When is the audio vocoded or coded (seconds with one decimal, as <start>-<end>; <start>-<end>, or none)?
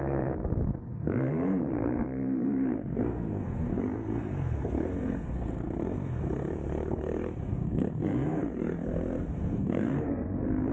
0.0-10.7